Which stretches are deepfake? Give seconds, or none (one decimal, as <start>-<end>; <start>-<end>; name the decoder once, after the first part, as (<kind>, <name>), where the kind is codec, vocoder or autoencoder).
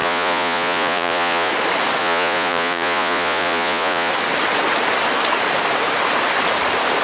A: 0.0-1.5 (vocoder, Vocos); 2.0-4.1